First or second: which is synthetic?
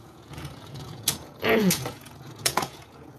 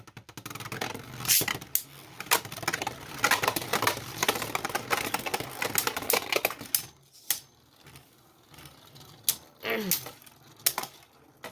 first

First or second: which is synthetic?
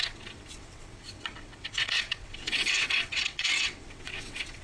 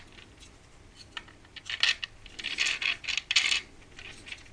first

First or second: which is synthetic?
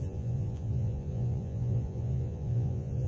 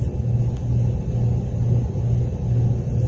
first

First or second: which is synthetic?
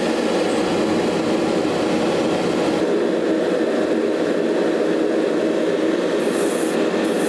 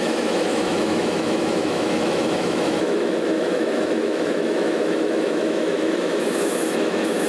second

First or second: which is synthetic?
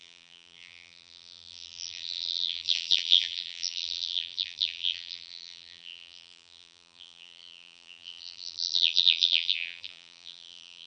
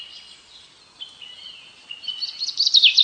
first